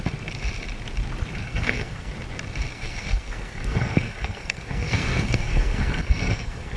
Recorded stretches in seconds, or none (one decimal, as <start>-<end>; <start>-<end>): 0.0-1.4; 2.1-2.7